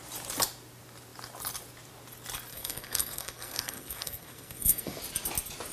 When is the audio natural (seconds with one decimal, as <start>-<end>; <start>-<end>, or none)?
0.0-2.5; 5.0-5.7